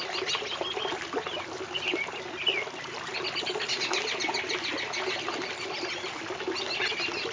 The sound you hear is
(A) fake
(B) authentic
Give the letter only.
B